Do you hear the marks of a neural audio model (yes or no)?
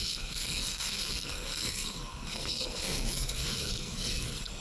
yes